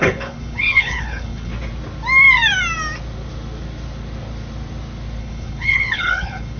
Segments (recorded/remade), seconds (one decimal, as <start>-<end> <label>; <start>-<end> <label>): 0.0-1.5 remade; 1.5-5.2 recorded; 5.2-6.6 remade